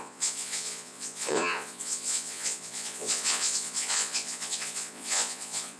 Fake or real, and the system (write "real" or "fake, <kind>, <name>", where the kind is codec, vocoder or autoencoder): fake, vocoder, Vocos